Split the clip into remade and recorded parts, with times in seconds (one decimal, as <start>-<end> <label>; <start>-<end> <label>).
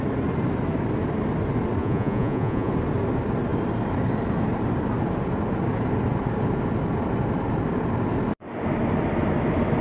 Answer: 0.0-1.8 recorded; 1.8-2.7 remade; 2.7-9.8 recorded